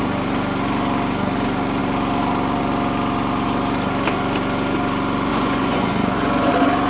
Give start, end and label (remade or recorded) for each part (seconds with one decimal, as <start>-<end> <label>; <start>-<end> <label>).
0.0-5.3 recorded; 5.3-6.5 remade; 6.5-6.9 recorded